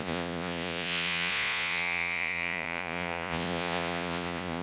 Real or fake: fake